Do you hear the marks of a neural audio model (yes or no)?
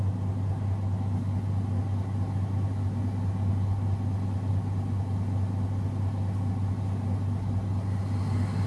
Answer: no